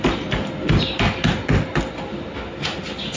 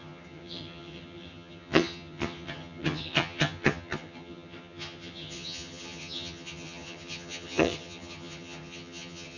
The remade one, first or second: second